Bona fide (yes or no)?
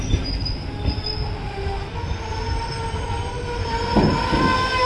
yes